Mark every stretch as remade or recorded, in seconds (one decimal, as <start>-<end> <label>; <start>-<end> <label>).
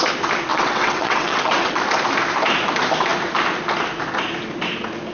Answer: 0.0-0.5 recorded; 0.5-1.8 remade; 1.8-5.1 recorded